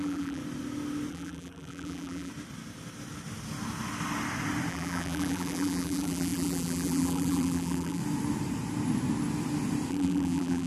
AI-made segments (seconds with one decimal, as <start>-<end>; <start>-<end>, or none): 0.0-0.4; 1.1-2.3; 4.7-8.0; 9.9-10.7